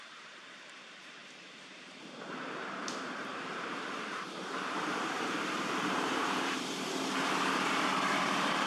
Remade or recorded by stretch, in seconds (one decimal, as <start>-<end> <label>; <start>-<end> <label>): 0.0-8.7 remade